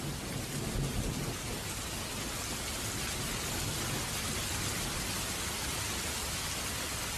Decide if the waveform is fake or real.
real